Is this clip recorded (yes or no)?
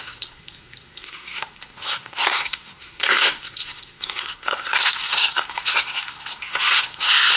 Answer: no